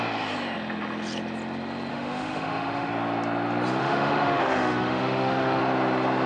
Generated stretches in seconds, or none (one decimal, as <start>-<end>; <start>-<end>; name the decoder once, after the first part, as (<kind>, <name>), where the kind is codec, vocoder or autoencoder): 1.9-2.9 (autoencoder, DAC-VAE); 3.8-5.6